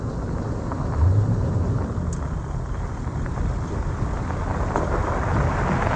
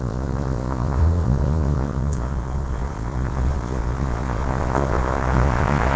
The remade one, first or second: second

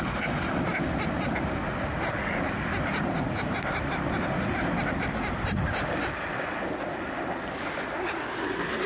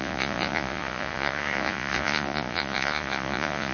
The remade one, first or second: second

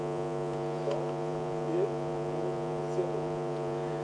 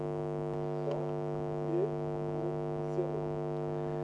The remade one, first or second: first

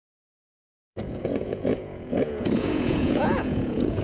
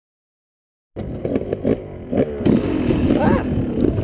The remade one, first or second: first